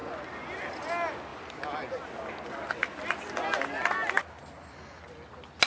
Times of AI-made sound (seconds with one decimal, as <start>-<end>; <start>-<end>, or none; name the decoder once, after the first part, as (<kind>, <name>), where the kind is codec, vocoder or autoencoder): none